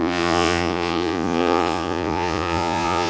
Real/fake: fake